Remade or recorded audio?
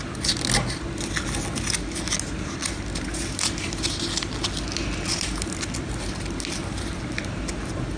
recorded